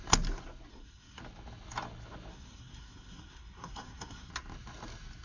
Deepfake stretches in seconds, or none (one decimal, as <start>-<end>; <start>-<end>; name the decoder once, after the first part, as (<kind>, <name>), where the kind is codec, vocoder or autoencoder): 0.7-1.2 (codec, SNAC); 2.3-4.3